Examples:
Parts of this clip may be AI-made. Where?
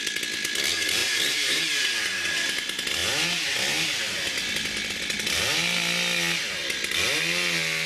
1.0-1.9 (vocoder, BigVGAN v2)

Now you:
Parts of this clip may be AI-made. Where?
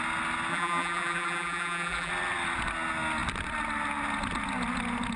0.5-2.1 (vocoder, BigVGAN v2)